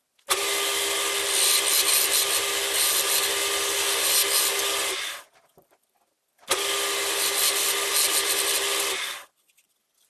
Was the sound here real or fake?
real